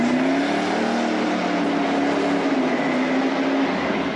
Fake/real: real